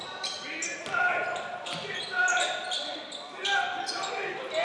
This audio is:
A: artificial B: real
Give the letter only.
B